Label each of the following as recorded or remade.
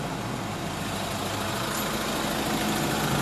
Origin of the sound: recorded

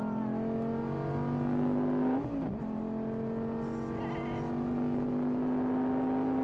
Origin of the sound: recorded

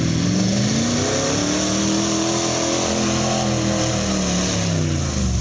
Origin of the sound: recorded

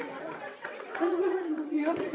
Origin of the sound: remade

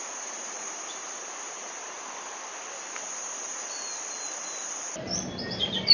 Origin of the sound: remade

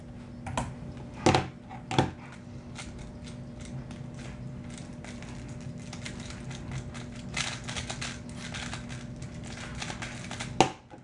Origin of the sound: recorded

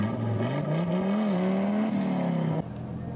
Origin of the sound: recorded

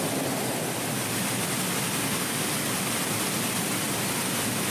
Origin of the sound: recorded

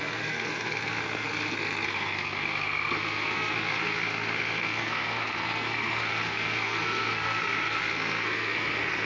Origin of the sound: remade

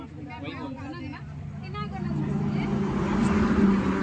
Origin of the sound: recorded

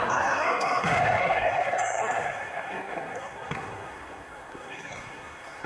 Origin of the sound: remade